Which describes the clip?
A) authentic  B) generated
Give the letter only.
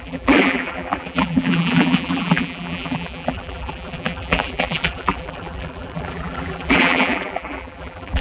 B